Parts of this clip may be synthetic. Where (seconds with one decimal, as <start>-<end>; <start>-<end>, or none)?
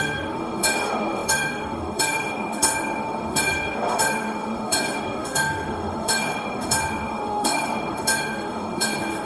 0.0-9.3